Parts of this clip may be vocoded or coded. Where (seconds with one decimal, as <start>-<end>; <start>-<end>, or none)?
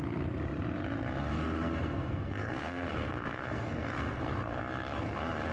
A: 1.3-4.6